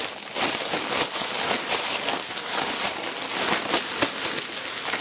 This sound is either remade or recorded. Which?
recorded